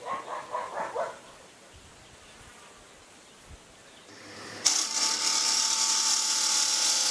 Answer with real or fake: fake